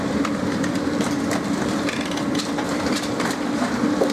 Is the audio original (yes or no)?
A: no